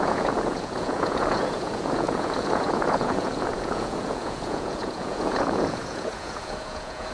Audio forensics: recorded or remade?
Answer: remade